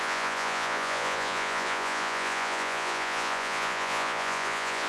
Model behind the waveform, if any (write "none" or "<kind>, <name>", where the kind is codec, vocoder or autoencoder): vocoder, Vocos